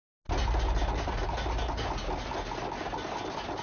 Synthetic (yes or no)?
no